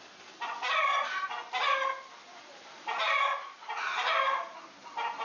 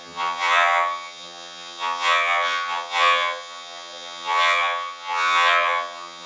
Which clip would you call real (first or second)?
first